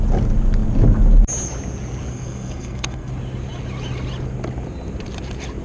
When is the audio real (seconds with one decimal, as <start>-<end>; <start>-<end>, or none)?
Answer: 0.0-2.1; 3.1-5.6